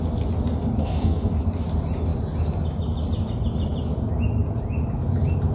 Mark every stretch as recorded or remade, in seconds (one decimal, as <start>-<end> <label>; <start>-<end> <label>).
0.0-0.8 recorded; 0.8-1.4 remade; 1.4-5.5 recorded